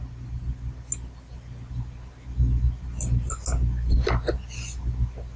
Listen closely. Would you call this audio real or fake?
real